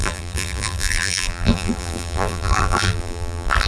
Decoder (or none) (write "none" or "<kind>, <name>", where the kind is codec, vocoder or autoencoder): vocoder, BigVGAN v2